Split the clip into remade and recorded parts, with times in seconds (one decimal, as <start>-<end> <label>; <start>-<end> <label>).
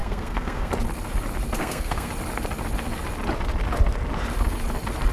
0.0-0.7 remade; 0.7-1.6 recorded; 1.6-2.1 remade; 2.1-5.1 recorded